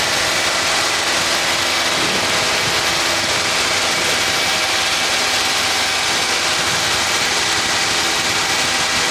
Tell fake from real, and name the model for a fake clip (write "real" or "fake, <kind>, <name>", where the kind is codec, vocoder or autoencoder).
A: real